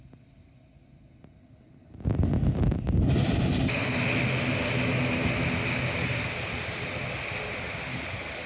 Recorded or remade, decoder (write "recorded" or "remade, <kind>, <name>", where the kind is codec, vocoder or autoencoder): recorded